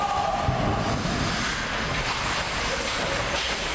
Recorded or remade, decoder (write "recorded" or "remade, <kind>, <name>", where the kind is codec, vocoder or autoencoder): recorded